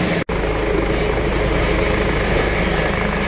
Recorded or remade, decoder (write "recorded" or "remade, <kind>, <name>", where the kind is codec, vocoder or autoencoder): recorded